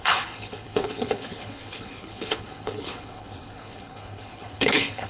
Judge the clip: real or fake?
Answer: fake